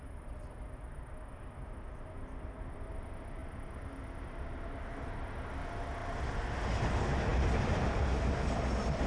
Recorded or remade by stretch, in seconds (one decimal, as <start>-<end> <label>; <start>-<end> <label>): 0.0-7.3 recorded; 7.3-8.0 remade; 8.0-9.1 recorded